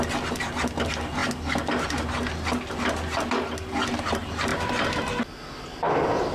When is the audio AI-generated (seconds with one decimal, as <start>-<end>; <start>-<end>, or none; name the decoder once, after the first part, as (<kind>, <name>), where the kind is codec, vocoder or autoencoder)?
none